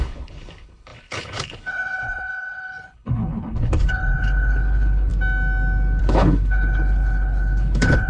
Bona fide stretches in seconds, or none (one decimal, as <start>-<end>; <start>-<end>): 5.1-6.0